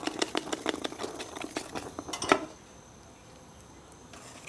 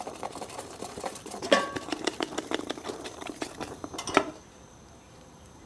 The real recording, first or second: first